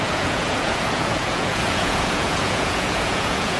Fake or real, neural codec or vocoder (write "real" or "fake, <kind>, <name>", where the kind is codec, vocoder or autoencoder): fake, vocoder, Vocos